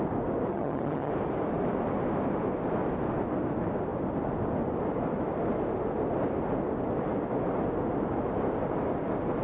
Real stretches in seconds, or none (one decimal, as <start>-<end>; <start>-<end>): 0.0-0.5; 1.1-9.4